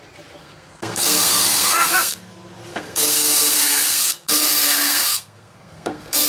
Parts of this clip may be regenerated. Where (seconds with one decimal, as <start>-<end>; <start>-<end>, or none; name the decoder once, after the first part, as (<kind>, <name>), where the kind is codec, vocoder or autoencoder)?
0.4-2.3 (codec, SNAC); 2.7-6.3